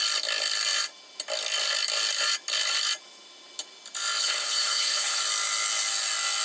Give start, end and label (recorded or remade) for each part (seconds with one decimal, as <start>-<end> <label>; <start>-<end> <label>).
0.0-4.2 recorded; 4.2-5.2 remade; 5.2-6.4 recorded